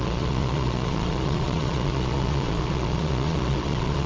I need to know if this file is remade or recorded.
remade